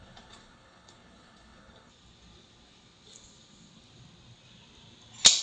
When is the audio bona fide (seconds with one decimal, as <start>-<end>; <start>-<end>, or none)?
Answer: 1.9-5.4